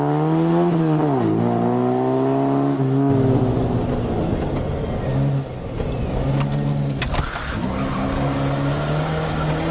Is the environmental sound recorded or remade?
recorded